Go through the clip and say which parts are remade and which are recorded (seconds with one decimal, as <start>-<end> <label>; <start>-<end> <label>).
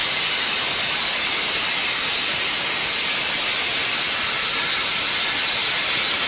0.0-6.3 recorded